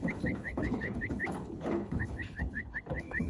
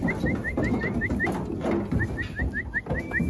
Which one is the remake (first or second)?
first